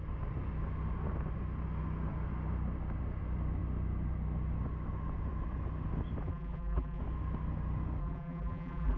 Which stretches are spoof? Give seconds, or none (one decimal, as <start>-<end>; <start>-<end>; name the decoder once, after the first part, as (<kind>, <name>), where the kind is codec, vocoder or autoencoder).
6.2-7.0 (vocoder, BigVGAN v2); 8.0-9.0